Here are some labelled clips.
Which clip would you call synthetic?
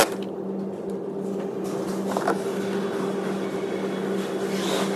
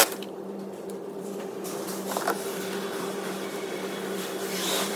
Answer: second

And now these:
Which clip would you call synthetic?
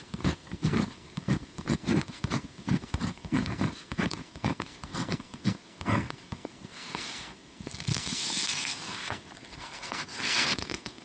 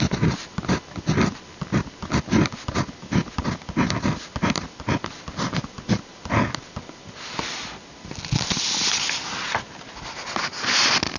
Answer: first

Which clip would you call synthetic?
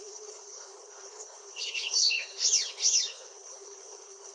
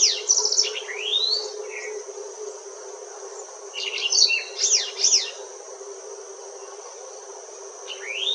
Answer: first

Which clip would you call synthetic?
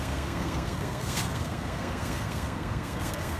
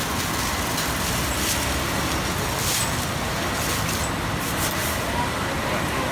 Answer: first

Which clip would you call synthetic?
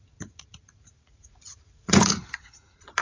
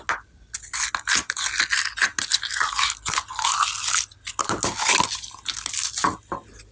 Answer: first